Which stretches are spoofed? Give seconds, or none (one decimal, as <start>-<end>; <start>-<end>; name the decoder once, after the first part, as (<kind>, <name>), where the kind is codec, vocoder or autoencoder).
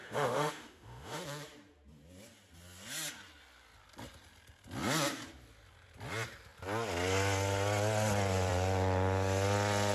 0.0-1.2 (autoencoder, DAC-VAE)